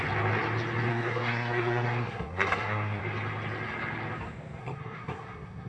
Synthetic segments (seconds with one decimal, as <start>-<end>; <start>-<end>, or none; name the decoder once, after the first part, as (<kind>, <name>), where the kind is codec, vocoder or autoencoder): 0.9-3.0 (codec, SNAC); 4.6-5.7